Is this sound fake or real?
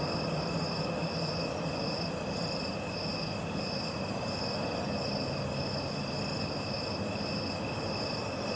real